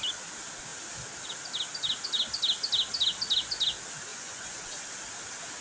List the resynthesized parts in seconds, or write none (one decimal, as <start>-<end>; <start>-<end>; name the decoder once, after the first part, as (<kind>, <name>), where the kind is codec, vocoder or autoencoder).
4.1-4.8 (vocoder, Vocos)